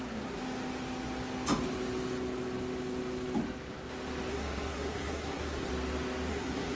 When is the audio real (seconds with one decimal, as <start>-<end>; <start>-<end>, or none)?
0.4-4.3; 5.7-6.3